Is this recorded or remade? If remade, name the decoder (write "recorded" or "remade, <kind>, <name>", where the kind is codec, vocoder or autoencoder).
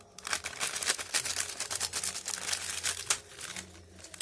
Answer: recorded